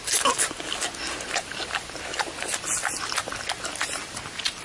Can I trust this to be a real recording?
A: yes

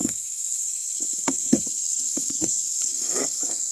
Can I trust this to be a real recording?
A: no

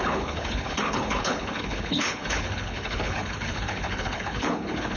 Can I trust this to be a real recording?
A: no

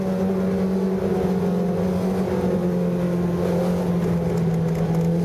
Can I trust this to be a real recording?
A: yes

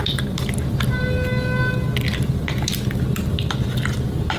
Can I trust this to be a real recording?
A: yes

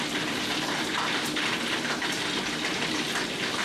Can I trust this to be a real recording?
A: yes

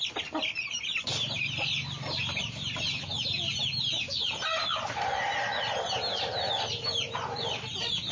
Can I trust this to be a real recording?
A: yes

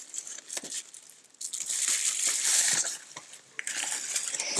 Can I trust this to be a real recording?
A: no